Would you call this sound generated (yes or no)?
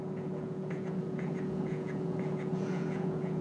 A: yes